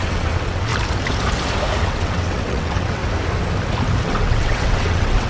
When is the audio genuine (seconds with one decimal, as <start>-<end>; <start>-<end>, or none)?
0.7-1.8; 3.0-4.0